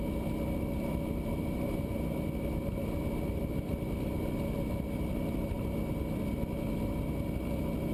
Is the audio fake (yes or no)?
no